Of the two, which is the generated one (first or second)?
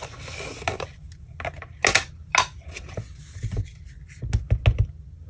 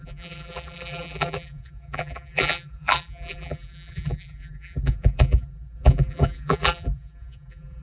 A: second